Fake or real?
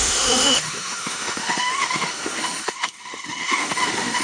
fake